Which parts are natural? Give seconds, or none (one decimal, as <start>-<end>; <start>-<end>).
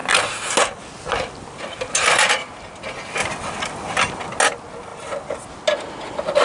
0.0-6.4